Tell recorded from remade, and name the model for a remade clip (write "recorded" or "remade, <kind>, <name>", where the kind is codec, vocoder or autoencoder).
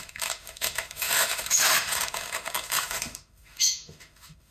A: remade, autoencoder, DAC-VAE